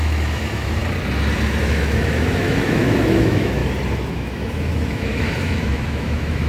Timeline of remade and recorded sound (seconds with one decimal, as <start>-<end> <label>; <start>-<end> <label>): 0.0-0.8 remade; 0.8-1.6 recorded; 1.6-3.6 remade; 3.6-4.1 recorded; 4.1-6.5 remade